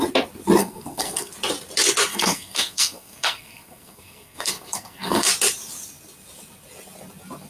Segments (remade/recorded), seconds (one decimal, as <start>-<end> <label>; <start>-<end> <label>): 0.0-0.6 recorded; 0.6-1.3 remade; 1.3-2.1 recorded; 2.1-5.3 remade; 5.3-7.5 recorded